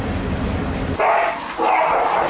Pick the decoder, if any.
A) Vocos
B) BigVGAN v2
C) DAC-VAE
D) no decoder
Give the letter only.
D